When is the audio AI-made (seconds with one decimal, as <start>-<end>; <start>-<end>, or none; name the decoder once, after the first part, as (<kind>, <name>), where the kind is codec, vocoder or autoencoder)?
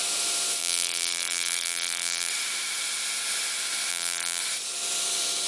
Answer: 0.6-2.3 (vocoder, BigVGAN v2); 3.9-4.4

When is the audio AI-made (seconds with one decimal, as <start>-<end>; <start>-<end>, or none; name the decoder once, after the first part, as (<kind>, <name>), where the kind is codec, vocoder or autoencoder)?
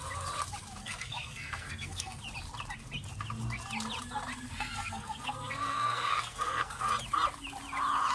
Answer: 0.8-2.2 (codec, SNAC); 4.5-6.9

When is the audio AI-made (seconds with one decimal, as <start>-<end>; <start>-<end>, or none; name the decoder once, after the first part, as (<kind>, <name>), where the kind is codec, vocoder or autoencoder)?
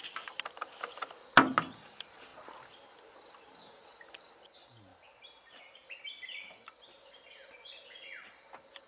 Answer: none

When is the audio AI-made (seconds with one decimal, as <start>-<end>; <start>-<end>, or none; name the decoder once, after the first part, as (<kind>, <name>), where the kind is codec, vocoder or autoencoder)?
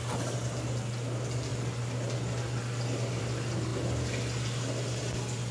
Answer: none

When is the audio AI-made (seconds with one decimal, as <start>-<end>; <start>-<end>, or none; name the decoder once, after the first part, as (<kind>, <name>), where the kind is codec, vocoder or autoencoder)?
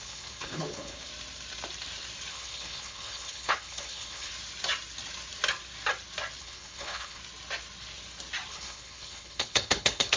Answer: 0.0-1.1 (codec, HILCodec); 2.3-4.3; 6.4-7.2; 8.5-10.2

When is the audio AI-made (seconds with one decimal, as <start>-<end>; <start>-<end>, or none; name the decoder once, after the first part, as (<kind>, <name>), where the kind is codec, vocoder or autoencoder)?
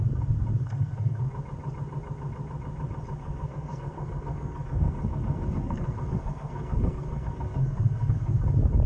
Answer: 0.6-1.2 (codec, SNAC); 3.2-8.4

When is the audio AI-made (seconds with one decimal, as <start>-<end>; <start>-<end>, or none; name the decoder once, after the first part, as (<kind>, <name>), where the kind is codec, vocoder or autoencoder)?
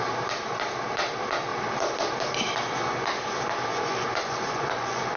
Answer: 3.7-5.2 (vocoder, Vocos)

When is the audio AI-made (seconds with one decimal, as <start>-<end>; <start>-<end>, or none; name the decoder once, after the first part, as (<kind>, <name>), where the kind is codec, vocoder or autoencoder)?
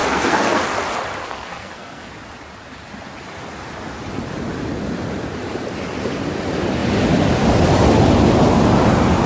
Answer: 0.0-0.6 (codec, SNAC); 1.2-2.1